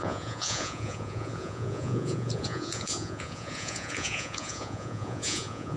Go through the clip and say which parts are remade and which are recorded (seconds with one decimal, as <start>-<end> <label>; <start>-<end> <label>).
0.0-5.8 remade